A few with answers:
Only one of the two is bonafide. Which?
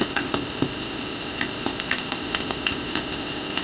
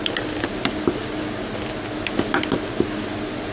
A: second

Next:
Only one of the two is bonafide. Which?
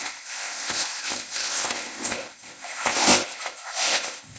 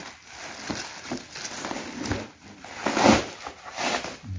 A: second